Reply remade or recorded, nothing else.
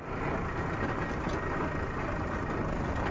recorded